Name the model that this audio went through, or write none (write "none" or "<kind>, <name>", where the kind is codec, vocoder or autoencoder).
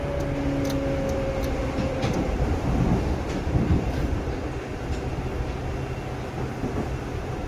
none